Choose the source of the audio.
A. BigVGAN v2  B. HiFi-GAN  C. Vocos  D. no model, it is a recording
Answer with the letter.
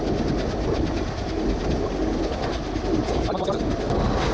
D